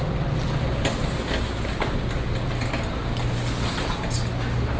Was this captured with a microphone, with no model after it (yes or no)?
yes